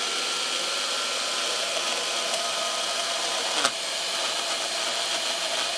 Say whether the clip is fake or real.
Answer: real